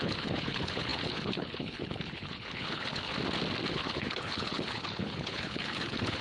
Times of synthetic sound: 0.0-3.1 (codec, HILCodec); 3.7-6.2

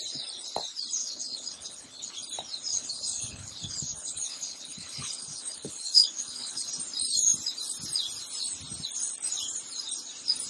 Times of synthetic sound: 1.0-2.1 (codec, HILCodec); 2.7-6.7

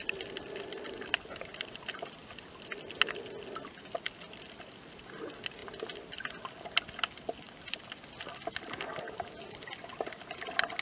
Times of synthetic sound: none

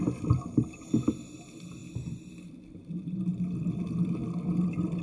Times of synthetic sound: none

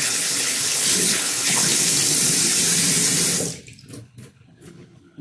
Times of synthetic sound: 0.0-1.7 (codec, HILCodec); 4.0-5.2

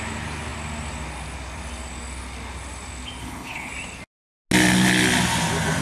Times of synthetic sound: 3.2-3.7 (codec, HILCodec)

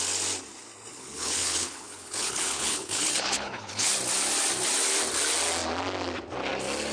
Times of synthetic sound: 0.9-3.9 (codec, HILCodec)

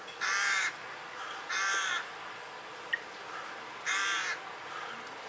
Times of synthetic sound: none